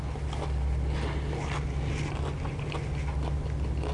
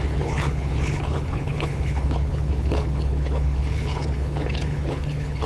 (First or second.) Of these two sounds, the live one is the first